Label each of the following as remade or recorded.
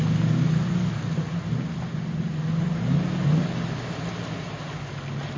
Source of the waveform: recorded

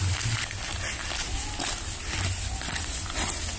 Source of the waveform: recorded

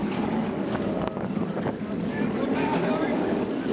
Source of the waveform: remade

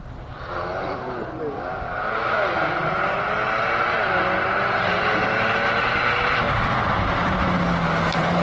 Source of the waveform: recorded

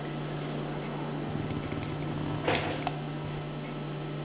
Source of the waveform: recorded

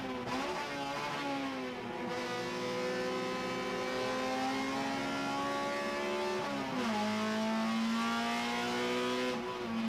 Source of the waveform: recorded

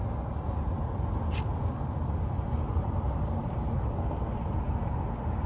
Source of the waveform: recorded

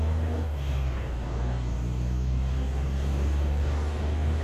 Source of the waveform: remade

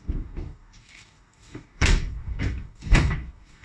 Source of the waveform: remade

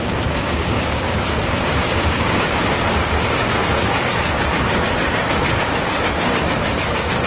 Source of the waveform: remade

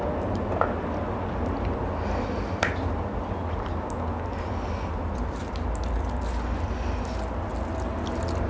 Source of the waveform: recorded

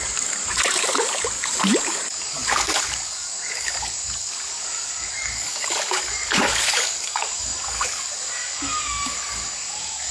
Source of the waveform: remade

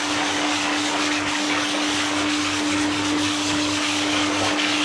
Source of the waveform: remade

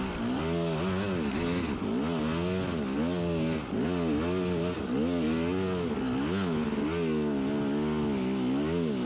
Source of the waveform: recorded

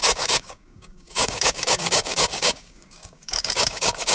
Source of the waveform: remade